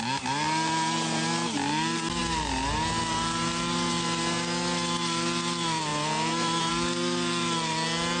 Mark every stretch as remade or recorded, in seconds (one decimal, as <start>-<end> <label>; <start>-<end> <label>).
0.0-8.2 recorded